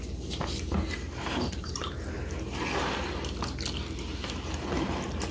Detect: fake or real real